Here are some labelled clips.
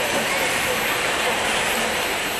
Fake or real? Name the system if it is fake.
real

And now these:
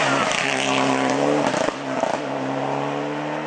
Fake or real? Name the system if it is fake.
real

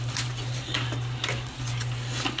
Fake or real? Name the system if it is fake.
real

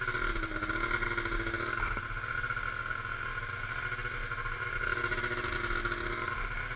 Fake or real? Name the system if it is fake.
real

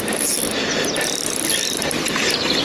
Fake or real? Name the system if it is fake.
fake, vocoder, BigVGAN v2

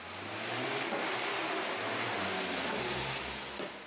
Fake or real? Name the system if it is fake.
real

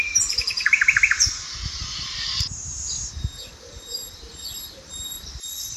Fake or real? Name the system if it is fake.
fake, vocoder, BigVGAN v2